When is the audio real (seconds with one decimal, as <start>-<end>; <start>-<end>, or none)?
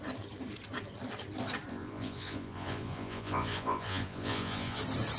0.0-1.7; 4.8-5.2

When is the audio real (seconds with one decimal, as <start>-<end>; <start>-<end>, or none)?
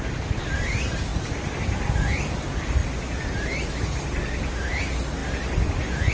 0.0-6.1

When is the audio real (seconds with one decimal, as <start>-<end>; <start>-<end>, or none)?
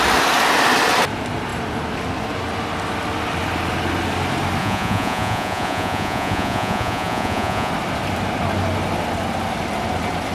0.0-4.6; 7.7-10.3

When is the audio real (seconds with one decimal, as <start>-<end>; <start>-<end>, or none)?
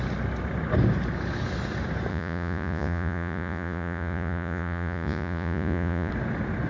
0.0-2.1; 6.1-6.7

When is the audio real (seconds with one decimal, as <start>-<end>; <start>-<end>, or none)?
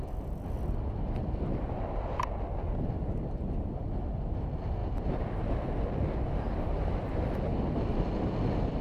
0.0-8.8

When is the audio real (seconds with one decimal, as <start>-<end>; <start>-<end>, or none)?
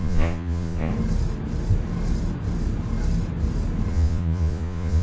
0.9-3.9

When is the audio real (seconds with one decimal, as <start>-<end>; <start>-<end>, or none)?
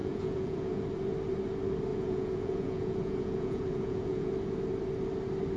0.8-1.9; 4.3-5.6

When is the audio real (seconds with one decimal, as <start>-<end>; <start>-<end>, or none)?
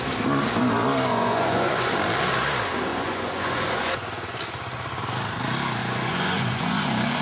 0.0-1.1; 1.9-2.9; 4.4-5.8